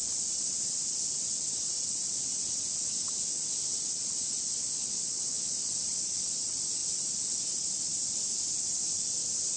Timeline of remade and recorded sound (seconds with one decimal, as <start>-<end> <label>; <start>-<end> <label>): 0.0-4.6 recorded; 4.6-5.7 remade; 5.7-9.6 recorded